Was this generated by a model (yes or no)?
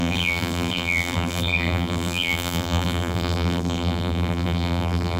yes